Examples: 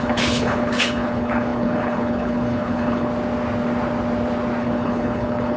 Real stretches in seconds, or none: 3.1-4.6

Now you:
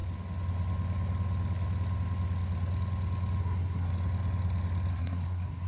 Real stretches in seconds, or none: 0.0-3.4; 3.9-4.9

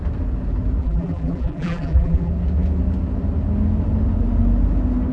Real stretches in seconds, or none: 0.0-0.8; 2.3-5.1

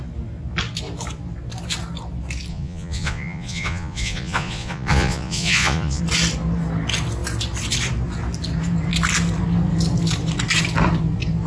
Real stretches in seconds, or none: 0.0-2.5; 6.0-11.5

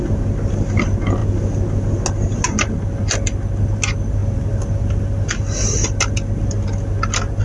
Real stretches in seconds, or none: 0.0-7.4

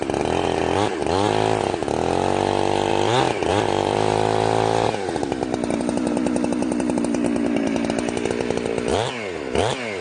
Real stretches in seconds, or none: 0.0-3.5; 5.2-10.0